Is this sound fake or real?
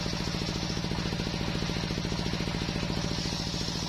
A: real